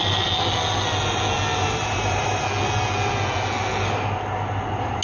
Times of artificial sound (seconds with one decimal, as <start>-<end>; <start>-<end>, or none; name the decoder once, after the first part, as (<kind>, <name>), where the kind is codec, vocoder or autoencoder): 1.5-2.4 (vocoder, BigVGAN v2)